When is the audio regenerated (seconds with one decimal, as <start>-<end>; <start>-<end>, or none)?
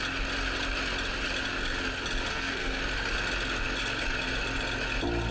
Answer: 2.3-2.8